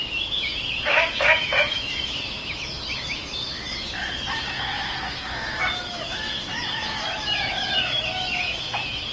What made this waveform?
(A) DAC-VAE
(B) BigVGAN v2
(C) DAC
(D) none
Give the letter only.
A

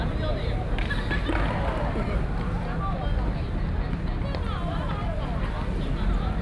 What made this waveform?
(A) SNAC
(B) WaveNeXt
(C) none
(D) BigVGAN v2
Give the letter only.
C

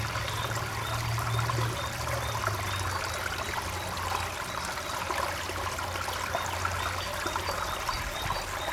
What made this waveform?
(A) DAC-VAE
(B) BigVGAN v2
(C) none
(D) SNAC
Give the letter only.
C